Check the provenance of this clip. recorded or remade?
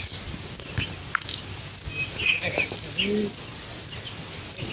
recorded